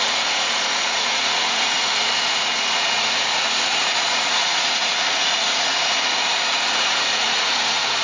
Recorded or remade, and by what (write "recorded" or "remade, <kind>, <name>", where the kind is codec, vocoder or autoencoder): remade, vocoder, Vocos